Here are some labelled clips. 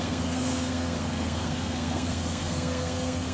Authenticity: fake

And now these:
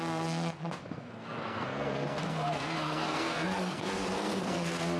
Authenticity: fake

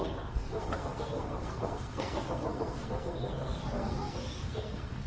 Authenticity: fake